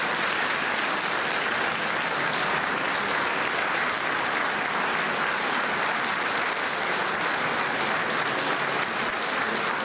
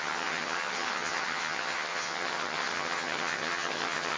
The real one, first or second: first